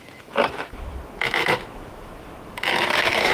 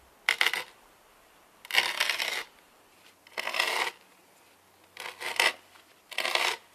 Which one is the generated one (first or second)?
first